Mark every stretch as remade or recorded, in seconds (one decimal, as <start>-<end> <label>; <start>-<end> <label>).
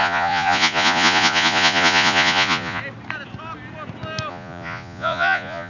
0.0-2.8 remade; 2.8-4.3 recorded; 4.3-5.7 remade